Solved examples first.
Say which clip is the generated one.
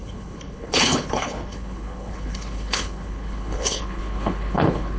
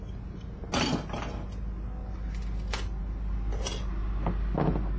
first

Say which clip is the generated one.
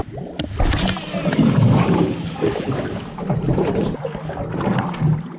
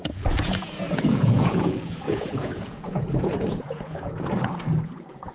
second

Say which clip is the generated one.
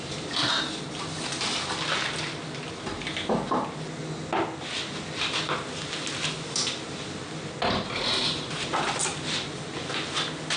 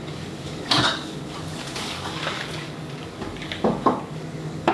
second